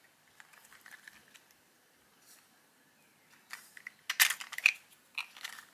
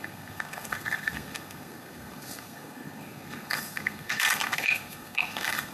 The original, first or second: first